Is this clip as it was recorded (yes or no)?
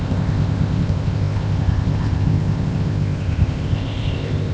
no